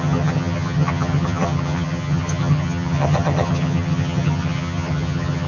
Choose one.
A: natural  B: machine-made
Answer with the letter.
B